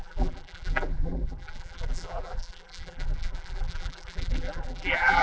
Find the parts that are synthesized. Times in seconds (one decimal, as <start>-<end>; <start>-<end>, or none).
0.0-5.2